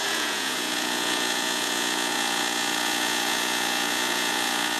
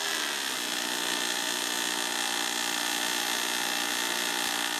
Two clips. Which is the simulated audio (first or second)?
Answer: first